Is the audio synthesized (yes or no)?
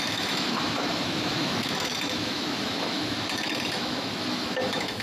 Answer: yes